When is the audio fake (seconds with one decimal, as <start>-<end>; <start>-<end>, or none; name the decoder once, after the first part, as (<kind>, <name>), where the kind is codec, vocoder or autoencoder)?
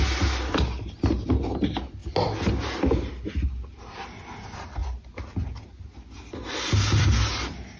none